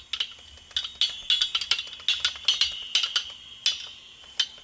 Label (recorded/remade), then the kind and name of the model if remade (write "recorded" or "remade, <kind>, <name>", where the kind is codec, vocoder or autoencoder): recorded